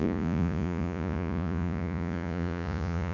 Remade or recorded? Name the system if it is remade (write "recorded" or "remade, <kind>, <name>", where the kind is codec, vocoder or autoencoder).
remade, vocoder, Vocos